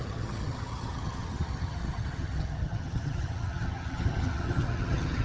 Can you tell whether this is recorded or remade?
remade